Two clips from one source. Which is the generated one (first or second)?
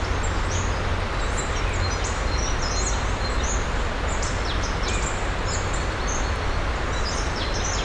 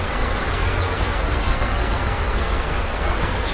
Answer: second